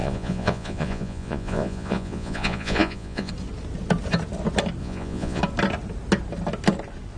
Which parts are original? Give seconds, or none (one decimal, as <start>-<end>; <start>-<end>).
3.3-4.8; 5.4-7.2